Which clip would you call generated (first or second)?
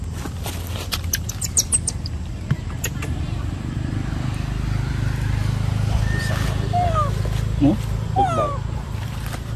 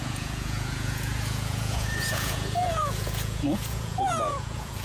second